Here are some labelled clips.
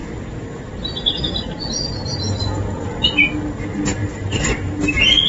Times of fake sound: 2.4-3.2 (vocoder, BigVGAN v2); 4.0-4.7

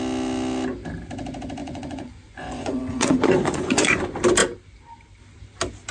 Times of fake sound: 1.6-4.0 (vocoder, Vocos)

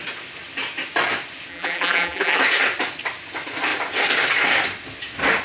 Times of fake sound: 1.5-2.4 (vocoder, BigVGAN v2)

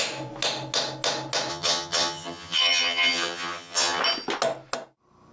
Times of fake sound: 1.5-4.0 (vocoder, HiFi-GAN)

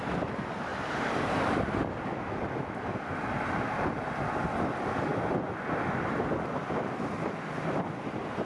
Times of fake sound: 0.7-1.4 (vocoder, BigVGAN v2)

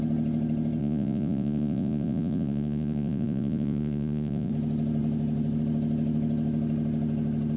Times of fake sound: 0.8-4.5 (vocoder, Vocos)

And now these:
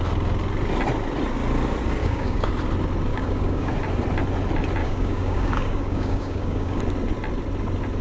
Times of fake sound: 2.0-2.5 (codec, DAC); 3.1-3.7; 4.8-6.8

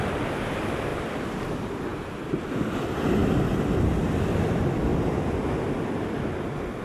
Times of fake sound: 0.9-1.4 (vocoder, BigVGAN v2); 3.2-4.5; 4.9-6.1